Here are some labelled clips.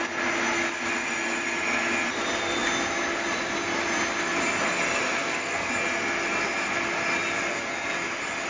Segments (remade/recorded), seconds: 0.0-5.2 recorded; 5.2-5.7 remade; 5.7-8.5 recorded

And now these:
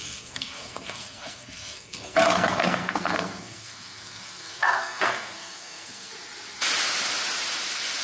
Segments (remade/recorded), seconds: 0.0-6.1 remade; 6.1-8.0 recorded

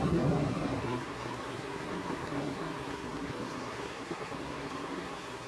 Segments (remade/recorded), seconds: 0.0-5.5 remade